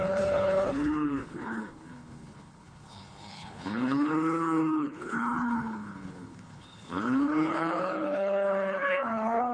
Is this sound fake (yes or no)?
yes